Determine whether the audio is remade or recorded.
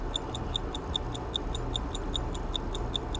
recorded